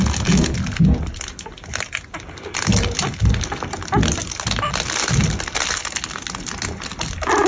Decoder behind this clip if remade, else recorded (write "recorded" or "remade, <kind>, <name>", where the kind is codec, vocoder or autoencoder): recorded